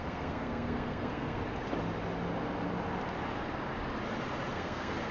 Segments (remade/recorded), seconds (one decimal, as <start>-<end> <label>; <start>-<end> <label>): 0.0-1.4 remade; 1.4-4.5 recorded; 4.5-5.1 remade